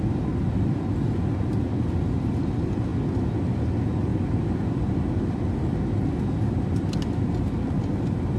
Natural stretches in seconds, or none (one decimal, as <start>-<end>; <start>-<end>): 0.0-8.4